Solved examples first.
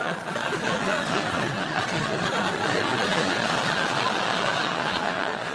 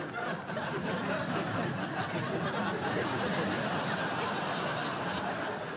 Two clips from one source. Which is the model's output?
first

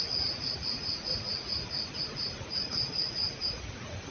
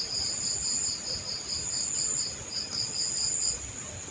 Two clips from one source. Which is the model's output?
first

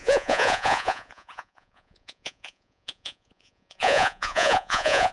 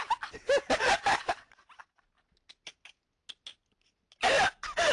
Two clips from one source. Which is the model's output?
first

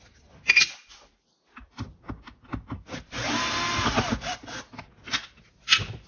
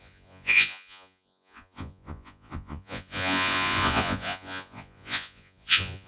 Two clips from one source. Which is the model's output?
second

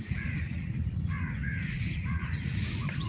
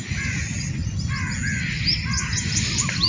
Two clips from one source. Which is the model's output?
first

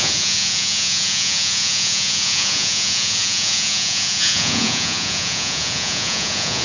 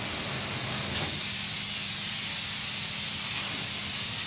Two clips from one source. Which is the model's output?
first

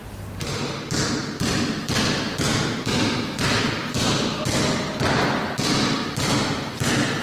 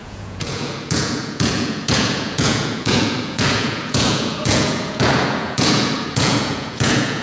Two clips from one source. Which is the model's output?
second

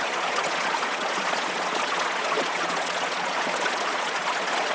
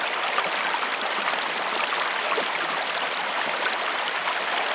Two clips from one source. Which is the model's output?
first